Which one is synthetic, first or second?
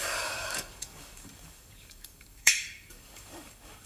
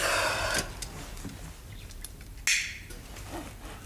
first